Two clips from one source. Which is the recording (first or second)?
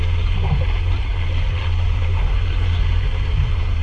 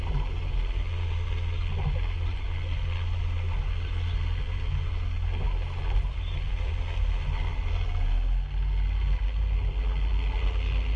second